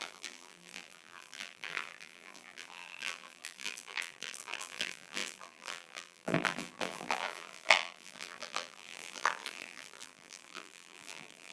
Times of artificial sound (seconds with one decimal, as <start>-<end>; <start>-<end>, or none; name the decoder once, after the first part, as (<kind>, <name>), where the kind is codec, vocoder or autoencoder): 0.0-11.5 (vocoder, BigVGAN v2)